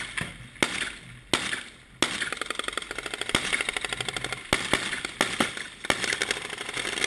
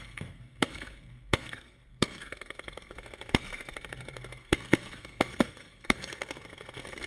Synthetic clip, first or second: second